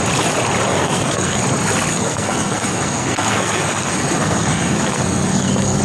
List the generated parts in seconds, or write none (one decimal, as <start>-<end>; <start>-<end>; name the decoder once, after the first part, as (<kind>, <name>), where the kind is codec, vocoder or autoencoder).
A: 0.7-1.4 (codec, SNAC); 1.9-5.8